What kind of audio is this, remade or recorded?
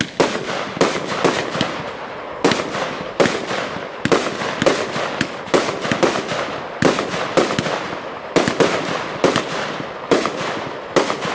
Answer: recorded